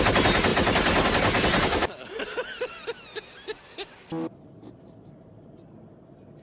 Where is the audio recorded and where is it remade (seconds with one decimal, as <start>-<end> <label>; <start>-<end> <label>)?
0.0-0.5 remade; 0.5-4.3 recorded; 4.3-6.4 remade